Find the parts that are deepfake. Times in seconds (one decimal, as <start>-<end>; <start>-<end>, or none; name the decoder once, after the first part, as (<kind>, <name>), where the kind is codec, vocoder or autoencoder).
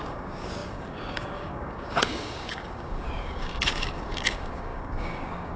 0.0-5.6 (codec, DAC)